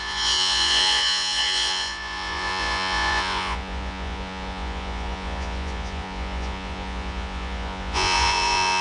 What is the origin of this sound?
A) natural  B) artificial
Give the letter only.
B